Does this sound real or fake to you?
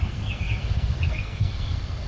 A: fake